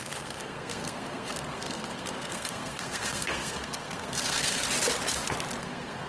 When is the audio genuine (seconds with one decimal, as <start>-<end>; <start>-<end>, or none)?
4.6-5.6